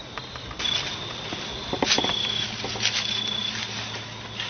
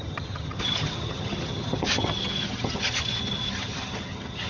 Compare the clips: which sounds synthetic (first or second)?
second